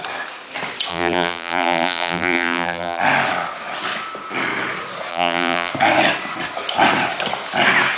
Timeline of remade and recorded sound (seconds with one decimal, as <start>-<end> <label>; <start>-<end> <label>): 0.0-0.9 recorded; 0.9-3.0 remade; 3.0-5.1 recorded; 5.1-5.7 remade; 5.7-8.0 recorded